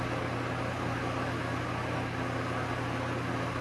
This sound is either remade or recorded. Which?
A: recorded